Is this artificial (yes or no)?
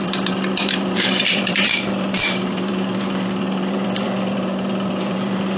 yes